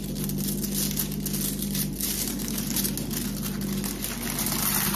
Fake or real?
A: real